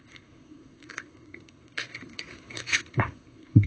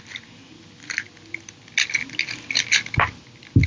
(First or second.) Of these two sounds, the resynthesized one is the first